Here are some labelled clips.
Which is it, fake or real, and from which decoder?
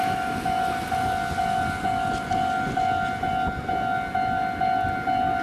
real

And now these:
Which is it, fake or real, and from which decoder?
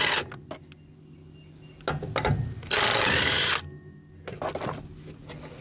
real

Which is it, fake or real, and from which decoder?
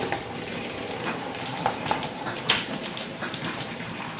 fake, vocoder, BigVGAN v2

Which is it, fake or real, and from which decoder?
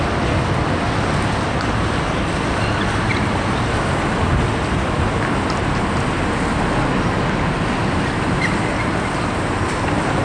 real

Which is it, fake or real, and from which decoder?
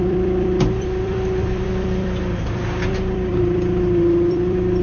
fake, vocoder, BigVGAN v2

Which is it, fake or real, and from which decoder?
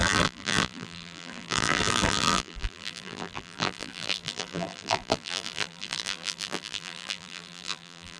fake, vocoder, BigVGAN v2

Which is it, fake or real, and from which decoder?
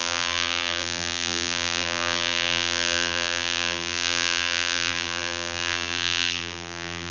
fake, vocoder, BigVGAN v2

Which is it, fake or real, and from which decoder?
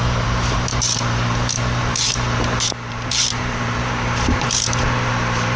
fake, vocoder, BigVGAN v2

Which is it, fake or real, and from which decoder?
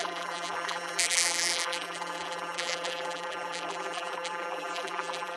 fake, vocoder, BigVGAN v2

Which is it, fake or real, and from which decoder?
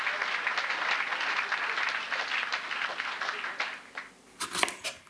real